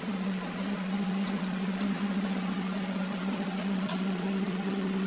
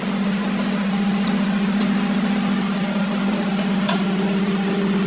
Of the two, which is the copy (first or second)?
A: first